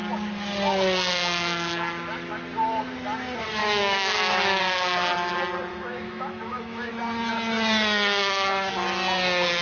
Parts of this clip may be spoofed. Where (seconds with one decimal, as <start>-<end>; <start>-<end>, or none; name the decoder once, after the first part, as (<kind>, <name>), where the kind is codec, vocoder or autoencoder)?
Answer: 3.6-4.6 (autoencoder, DAC-VAE); 5.7-6.9